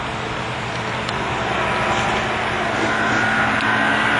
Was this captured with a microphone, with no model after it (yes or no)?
yes